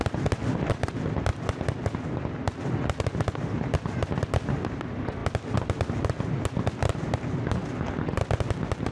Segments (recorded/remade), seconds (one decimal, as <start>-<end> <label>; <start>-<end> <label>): 0.0-8.9 recorded